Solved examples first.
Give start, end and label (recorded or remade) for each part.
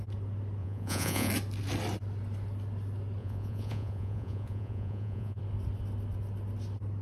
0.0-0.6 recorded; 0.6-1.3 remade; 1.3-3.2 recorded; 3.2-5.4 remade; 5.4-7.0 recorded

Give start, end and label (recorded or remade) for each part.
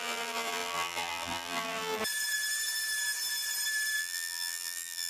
0.0-2.0 remade; 2.0-4.0 recorded; 4.0-5.1 remade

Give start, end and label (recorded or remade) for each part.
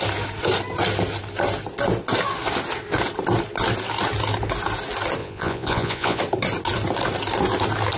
0.0-5.2 recorded; 5.2-6.2 remade; 6.2-8.0 recorded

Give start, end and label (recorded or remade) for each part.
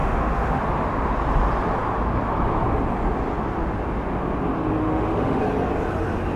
0.0-0.6 remade; 0.6-4.8 recorded; 4.8-5.4 remade; 5.4-6.4 recorded